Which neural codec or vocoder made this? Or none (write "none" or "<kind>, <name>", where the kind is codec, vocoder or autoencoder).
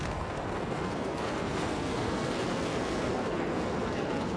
codec, SNAC